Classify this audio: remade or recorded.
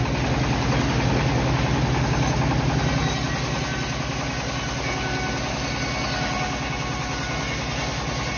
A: recorded